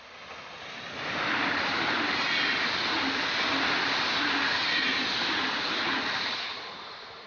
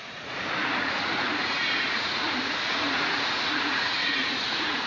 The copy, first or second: second